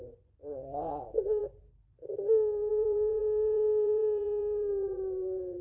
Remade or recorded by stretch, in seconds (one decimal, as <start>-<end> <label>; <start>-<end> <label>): 0.0-1.4 remade; 1.4-2.7 recorded; 2.7-5.6 remade